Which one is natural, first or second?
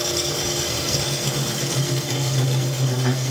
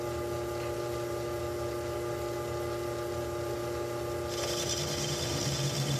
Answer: second